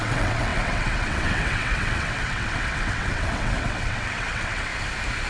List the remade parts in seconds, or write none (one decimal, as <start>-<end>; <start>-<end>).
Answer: 0.0-4.7